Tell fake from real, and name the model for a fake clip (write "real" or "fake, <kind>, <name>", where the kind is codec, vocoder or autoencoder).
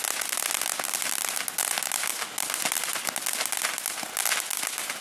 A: real